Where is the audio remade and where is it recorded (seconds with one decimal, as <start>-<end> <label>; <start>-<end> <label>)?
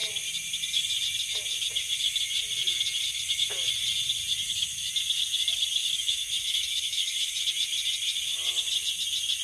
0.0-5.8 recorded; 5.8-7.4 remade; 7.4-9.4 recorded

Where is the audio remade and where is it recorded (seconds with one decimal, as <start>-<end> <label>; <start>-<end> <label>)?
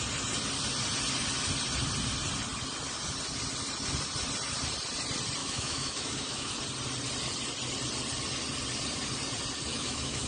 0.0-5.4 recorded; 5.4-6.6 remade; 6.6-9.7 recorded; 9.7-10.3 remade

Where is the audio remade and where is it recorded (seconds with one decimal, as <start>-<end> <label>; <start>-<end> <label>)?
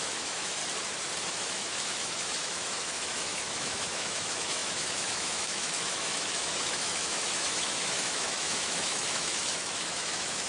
0.0-0.6 remade; 0.6-1.3 recorded; 1.3-10.5 remade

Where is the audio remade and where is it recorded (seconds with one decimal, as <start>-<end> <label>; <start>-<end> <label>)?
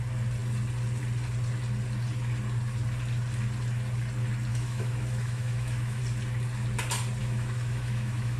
0.0-4.5 recorded; 4.5-6.0 remade; 6.0-7.2 recorded; 7.2-8.4 remade